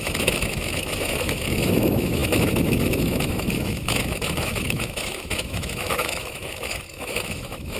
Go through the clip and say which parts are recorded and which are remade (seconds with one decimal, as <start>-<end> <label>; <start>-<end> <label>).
0.0-7.8 remade